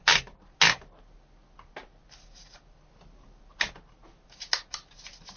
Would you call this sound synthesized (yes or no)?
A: no